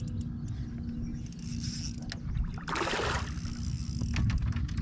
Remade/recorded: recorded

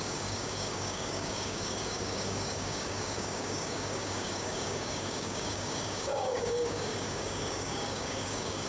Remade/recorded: remade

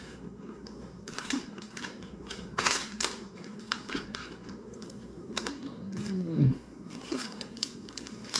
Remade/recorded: remade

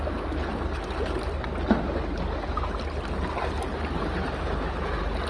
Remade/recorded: recorded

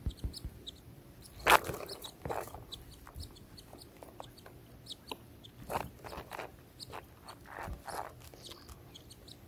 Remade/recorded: recorded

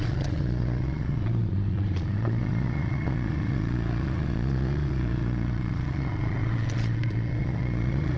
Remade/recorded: remade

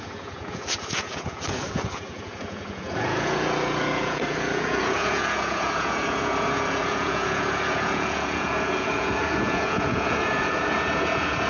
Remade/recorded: remade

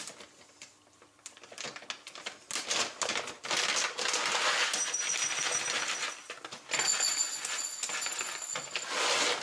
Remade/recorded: recorded